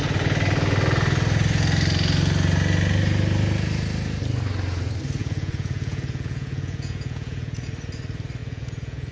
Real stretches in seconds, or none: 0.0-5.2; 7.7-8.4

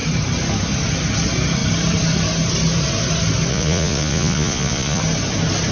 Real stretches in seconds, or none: 0.0-3.5; 5.0-5.7

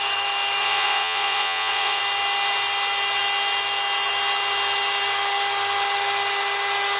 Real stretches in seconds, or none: 0.0-0.6; 2.0-7.0

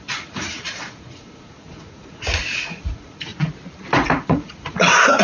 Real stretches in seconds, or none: 3.3-4.3

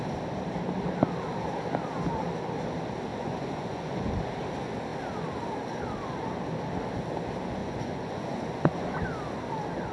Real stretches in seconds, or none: 0.0-3.1; 4.1-7.6; 8.9-9.9

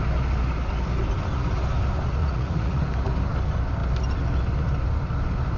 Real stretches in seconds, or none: 0.0-2.2; 2.8-5.6

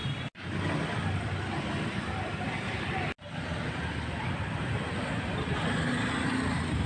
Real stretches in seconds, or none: 0.0-6.9